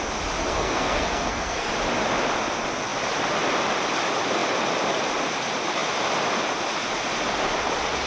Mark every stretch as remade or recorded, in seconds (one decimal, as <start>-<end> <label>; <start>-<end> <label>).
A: 0.0-0.4 recorded; 0.4-1.7 remade; 1.7-8.1 recorded